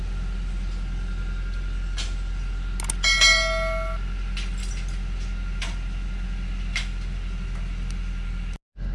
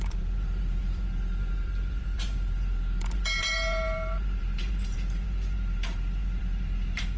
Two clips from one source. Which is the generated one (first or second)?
second